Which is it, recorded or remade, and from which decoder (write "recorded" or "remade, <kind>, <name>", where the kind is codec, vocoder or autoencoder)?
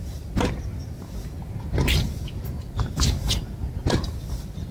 recorded